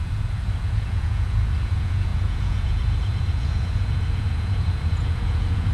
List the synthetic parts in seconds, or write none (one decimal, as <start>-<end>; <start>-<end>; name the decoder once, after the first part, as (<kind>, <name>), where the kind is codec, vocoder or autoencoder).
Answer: 0.0-5.7 (vocoder, Vocos)